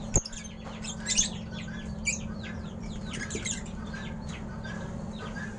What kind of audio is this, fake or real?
fake